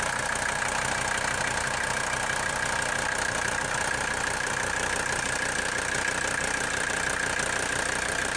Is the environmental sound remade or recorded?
recorded